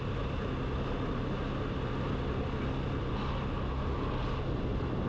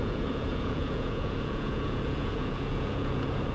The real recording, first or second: first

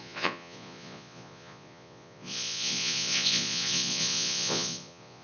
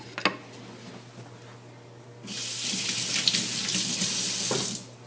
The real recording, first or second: second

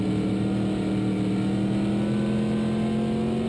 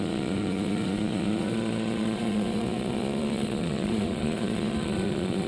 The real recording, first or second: first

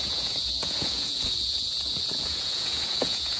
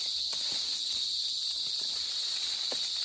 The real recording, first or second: second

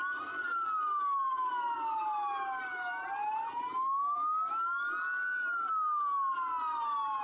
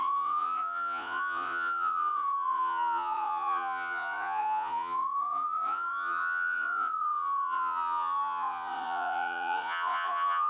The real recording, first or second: first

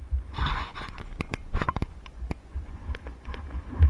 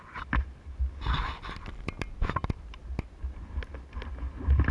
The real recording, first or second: second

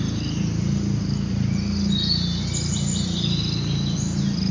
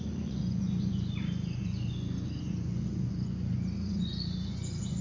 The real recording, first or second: first